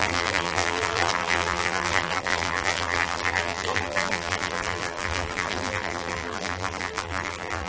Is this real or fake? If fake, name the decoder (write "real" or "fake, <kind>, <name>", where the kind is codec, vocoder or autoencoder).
fake, vocoder, BigVGAN v2